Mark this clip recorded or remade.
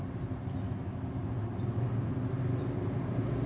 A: recorded